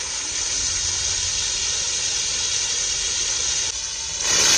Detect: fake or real real